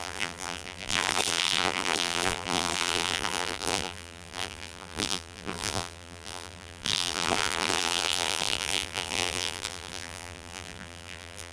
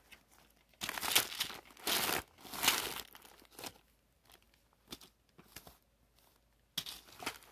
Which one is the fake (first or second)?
first